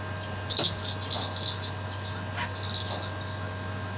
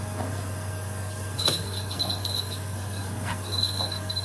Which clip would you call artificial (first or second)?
second